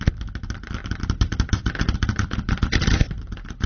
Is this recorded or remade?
recorded